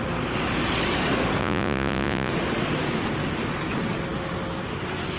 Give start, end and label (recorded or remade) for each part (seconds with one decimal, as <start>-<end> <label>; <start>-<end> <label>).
0.0-1.4 recorded; 1.4-2.3 remade; 2.3-5.2 recorded

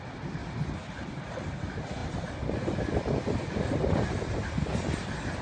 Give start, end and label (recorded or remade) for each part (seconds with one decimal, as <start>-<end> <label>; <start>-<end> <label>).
0.0-5.4 recorded

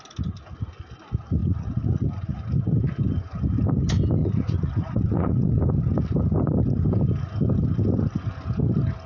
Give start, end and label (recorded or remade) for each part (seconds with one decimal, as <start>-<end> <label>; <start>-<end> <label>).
0.0-1.4 recorded; 1.4-2.3 remade; 2.3-4.2 recorded; 4.2-5.6 remade; 5.6-9.1 recorded

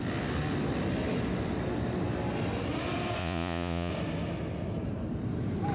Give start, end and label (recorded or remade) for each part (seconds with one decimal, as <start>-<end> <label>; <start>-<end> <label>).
0.0-3.2 recorded; 3.2-3.9 remade; 3.9-5.7 recorded

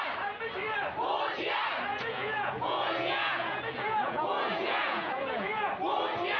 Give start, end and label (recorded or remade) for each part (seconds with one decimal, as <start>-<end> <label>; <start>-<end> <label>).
0.0-1.9 recorded; 1.9-5.7 remade; 5.7-6.4 recorded